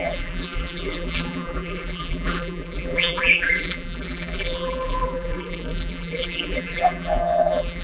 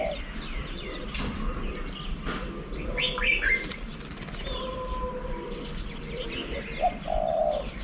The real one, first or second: second